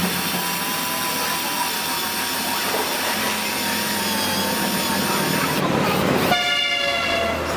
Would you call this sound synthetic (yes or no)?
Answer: no